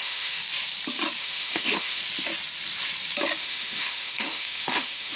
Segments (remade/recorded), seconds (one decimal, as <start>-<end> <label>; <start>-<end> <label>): 0.0-0.4 remade; 0.4-1.2 recorded; 1.2-2.0 remade; 2.0-3.4 recorded; 3.4-5.2 remade